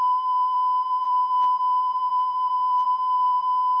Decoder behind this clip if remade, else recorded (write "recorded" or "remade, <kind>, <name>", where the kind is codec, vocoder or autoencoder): remade, vocoder, BigVGAN v2